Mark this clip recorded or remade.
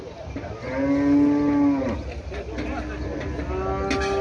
recorded